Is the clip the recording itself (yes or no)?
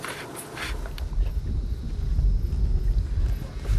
yes